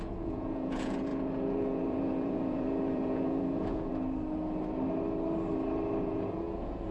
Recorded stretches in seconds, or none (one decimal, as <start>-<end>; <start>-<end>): 3.9-6.0